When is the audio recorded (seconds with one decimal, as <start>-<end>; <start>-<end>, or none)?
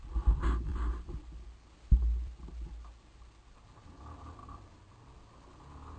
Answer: 0.0-6.0